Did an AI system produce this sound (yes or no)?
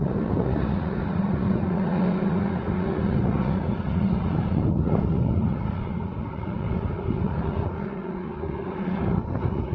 yes